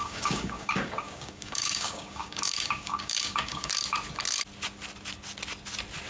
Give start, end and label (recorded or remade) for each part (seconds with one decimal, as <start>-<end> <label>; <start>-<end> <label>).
0.0-3.7 remade; 3.7-6.1 recorded